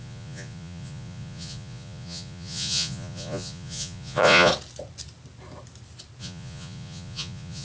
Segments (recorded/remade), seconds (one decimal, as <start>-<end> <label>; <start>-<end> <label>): 0.0-4.5 remade; 4.5-6.2 recorded; 6.2-7.6 remade